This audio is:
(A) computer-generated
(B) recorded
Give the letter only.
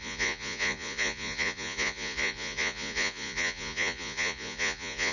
A